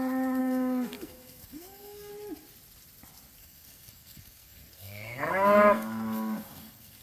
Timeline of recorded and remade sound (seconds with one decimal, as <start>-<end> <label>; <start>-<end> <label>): 0.0-0.4 recorded; 0.4-2.1 remade; 2.1-3.4 recorded; 3.4-7.0 remade